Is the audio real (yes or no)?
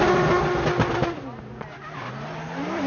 yes